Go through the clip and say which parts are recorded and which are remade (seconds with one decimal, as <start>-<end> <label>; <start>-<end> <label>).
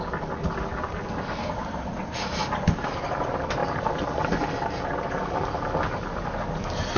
0.0-7.0 recorded